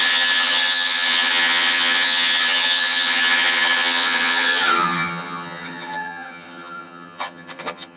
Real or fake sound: fake